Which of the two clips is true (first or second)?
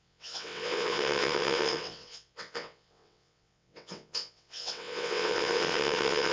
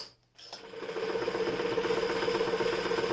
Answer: second